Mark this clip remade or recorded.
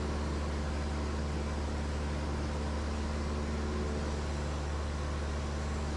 recorded